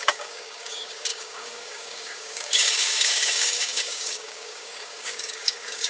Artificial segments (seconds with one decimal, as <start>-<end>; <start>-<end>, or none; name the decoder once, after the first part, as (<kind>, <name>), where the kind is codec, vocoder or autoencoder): 0.0-5.9 (codec, DAC)